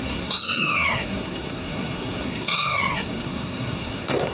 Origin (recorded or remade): remade